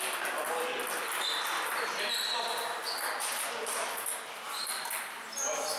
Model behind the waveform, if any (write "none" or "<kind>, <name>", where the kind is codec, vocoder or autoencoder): none